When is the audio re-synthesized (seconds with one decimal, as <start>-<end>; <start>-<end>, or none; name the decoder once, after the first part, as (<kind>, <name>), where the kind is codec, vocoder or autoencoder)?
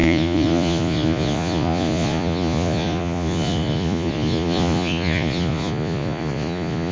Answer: 0.0-6.9 (vocoder, Vocos)